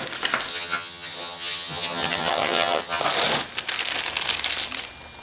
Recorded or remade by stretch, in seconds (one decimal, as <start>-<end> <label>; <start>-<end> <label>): 0.0-0.5 recorded; 0.5-3.0 remade; 3.0-5.2 recorded